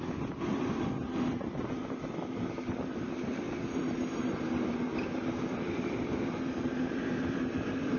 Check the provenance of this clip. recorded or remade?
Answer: recorded